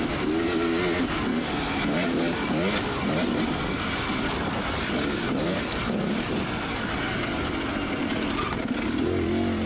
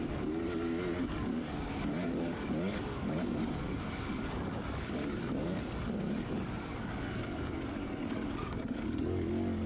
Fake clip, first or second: second